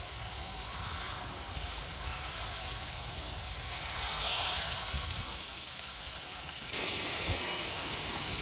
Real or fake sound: fake